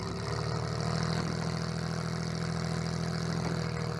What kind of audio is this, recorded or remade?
recorded